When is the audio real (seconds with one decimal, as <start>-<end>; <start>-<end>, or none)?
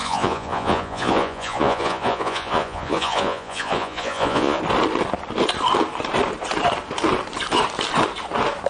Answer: 4.6-8.7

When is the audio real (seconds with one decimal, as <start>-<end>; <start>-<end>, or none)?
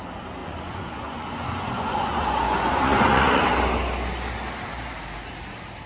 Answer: 0.0-0.4; 3.4-5.9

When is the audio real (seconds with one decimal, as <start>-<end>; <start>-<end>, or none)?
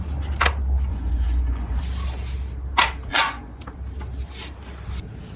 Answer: 0.0-0.9; 1.8-3.1; 3.6-5.4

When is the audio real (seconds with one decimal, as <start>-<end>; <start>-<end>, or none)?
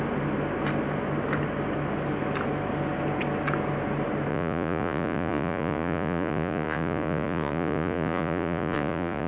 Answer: 0.0-4.3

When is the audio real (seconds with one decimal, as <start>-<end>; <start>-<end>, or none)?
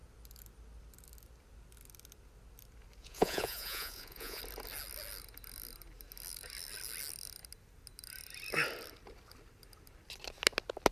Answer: 0.0-3.0; 4.4-10.9